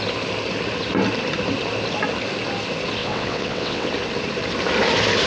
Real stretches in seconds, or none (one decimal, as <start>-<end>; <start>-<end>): 0.0-3.0; 3.9-5.3